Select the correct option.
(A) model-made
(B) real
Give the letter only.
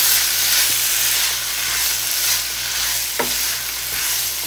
B